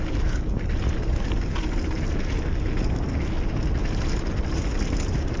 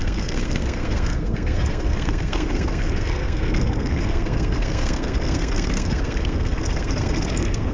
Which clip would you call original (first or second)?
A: first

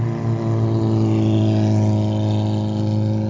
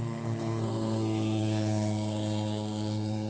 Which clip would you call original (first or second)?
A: first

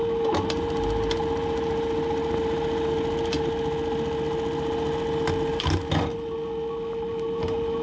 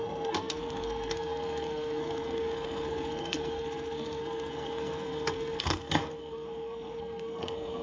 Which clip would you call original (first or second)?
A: first